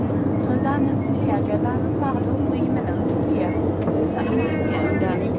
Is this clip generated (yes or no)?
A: no